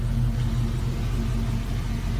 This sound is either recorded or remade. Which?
recorded